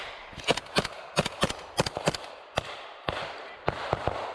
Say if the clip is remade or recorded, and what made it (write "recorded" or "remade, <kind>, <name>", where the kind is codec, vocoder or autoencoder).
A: recorded